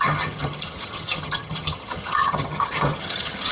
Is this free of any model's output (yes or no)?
no